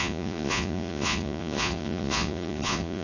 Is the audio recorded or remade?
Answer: remade